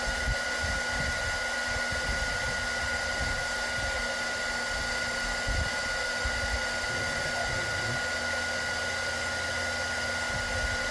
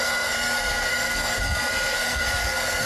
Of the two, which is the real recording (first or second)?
first